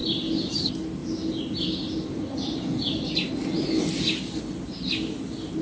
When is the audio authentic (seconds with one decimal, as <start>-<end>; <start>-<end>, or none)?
0.0-5.6